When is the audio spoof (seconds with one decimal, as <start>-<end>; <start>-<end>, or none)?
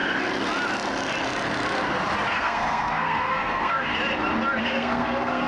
2.3-3.9; 4.6-5.5